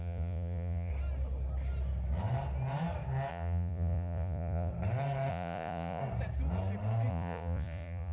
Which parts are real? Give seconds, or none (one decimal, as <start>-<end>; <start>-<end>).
0.9-3.3; 4.7-5.3; 6.0-7.1